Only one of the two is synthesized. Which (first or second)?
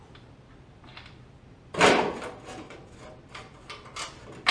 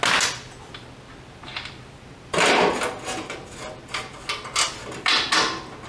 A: first